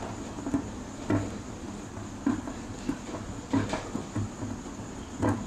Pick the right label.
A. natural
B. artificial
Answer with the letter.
A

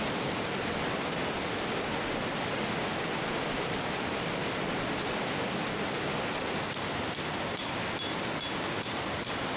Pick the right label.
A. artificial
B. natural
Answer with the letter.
B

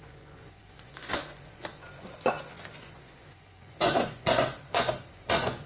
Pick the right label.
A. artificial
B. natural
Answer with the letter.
A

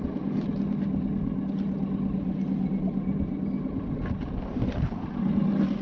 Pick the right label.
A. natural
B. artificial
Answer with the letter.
A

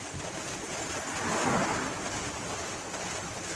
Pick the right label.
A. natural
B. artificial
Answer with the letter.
A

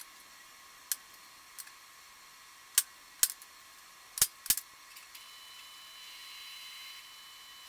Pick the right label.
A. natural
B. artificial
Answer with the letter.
A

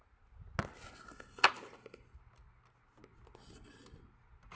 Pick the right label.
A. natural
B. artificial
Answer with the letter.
A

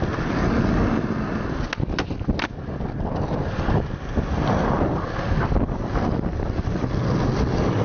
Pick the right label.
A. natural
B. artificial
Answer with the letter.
A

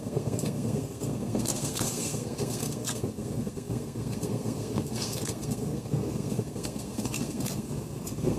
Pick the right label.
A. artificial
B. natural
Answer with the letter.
A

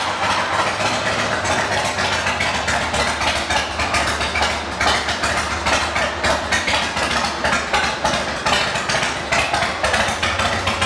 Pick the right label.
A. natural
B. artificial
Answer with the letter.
A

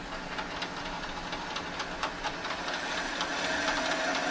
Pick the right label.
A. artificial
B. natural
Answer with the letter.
B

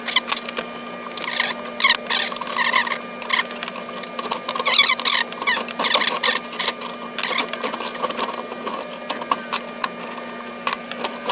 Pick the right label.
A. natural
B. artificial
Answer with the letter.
A